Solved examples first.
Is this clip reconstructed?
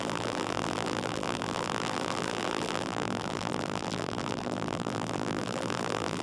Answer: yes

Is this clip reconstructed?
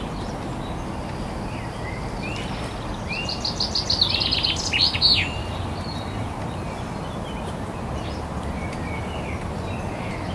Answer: no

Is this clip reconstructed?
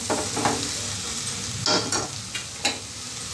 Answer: no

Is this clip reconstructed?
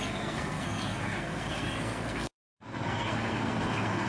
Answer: yes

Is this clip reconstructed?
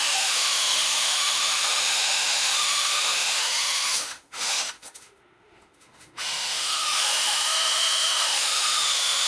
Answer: yes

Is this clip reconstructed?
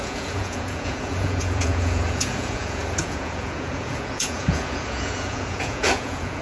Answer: yes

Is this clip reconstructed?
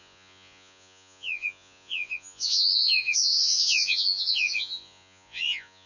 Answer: yes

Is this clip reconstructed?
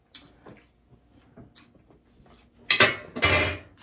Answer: no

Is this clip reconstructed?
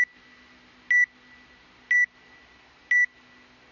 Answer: no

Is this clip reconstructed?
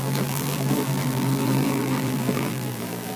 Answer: yes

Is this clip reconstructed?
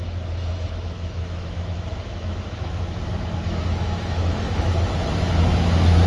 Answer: yes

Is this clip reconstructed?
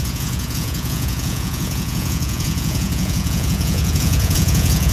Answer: yes